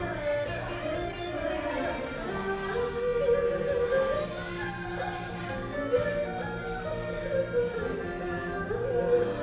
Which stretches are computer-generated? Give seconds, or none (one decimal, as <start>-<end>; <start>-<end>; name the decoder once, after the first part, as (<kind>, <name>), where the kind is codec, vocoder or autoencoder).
none